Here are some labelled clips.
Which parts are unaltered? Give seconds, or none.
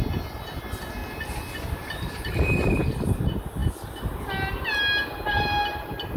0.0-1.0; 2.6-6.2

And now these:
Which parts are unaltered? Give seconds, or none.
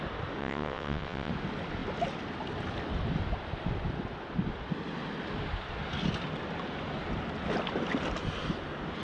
0.0-0.4; 1.3-9.0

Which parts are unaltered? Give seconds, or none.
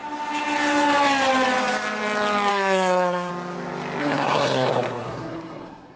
0.0-2.5; 3.3-4.0